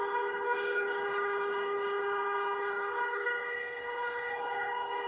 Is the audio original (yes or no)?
no